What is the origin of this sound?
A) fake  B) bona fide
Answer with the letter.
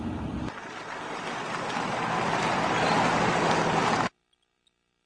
B